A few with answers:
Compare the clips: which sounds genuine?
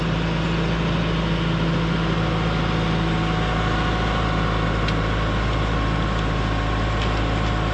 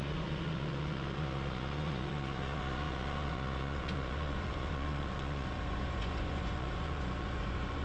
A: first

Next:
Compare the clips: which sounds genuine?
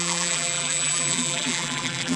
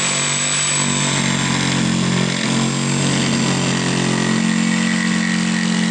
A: second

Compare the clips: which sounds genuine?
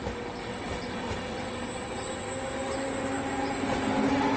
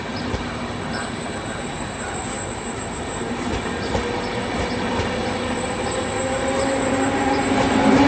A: first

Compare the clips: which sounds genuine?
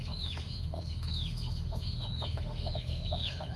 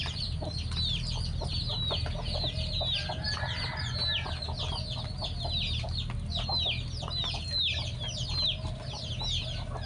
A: second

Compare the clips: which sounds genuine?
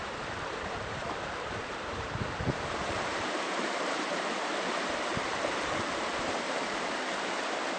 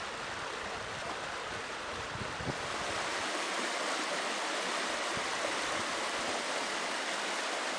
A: second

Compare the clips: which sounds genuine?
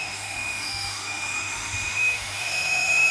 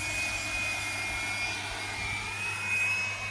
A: second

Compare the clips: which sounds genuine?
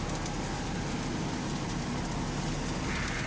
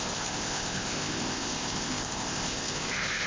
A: first